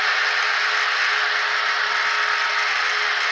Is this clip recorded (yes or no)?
yes